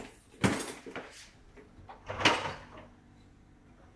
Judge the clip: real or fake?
real